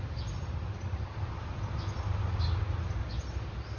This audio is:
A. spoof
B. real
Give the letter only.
B